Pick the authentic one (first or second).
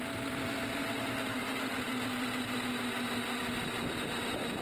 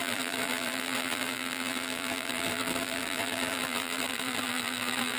first